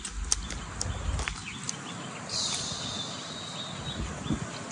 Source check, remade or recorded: recorded